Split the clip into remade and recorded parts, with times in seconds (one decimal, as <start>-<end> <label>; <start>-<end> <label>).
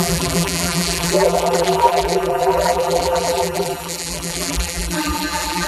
0.0-5.7 remade